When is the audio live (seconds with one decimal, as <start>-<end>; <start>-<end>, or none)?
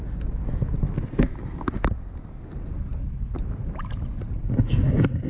0.0-5.3